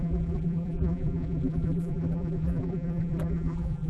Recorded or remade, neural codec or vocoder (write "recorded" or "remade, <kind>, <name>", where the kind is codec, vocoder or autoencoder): remade, vocoder, BigVGAN v2